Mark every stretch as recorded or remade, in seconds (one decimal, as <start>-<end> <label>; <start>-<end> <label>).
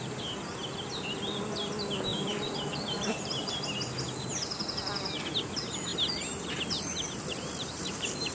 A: 0.0-2.1 recorded; 2.1-3.5 remade; 3.5-8.3 recorded